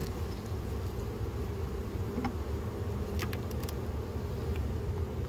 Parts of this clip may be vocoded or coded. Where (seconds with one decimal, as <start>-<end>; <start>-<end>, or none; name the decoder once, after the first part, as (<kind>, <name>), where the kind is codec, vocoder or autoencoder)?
none